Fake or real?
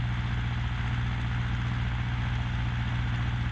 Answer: real